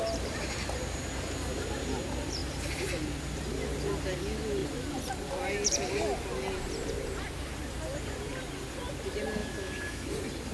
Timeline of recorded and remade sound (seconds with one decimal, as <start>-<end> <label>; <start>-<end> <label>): 0.0-9.4 recorded; 9.4-10.1 remade; 10.1-10.5 recorded